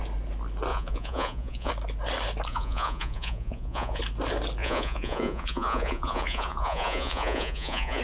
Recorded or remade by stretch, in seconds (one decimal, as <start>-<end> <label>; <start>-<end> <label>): 0.0-0.7 recorded; 0.7-1.7 remade; 1.7-2.5 recorded; 2.5-4.0 remade; 4.0-4.6 recorded; 4.6-8.0 remade